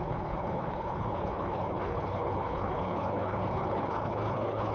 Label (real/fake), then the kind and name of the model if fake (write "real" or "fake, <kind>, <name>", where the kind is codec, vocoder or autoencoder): fake, codec, HILCodec